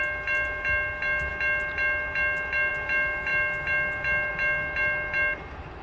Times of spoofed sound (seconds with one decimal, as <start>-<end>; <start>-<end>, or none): none